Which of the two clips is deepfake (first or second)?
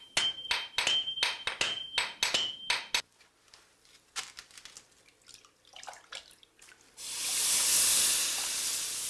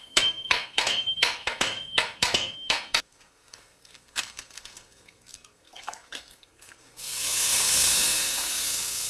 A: second